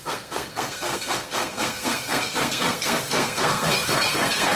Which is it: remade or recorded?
remade